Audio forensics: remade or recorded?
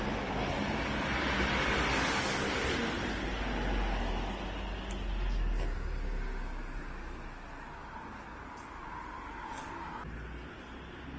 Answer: recorded